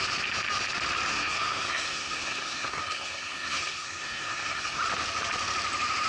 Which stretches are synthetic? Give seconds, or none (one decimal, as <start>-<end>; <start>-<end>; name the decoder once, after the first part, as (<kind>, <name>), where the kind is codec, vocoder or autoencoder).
1.1-4.8 (codec, SNAC)